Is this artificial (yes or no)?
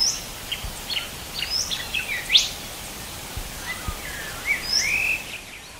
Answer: no